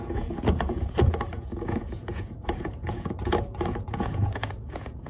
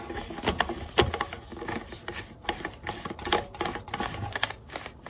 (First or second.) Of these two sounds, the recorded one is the second